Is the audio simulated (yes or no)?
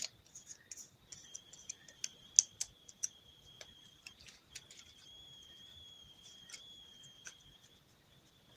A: no